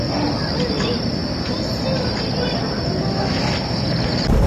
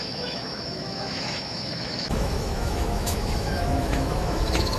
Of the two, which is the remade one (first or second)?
second